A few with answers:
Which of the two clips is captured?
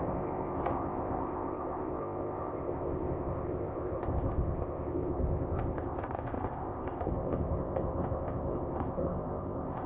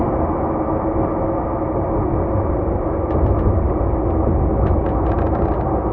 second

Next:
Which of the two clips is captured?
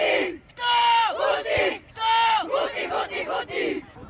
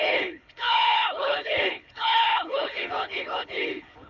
first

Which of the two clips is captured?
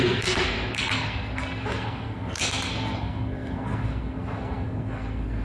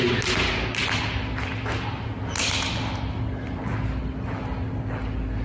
second